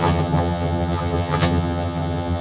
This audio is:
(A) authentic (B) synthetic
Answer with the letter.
B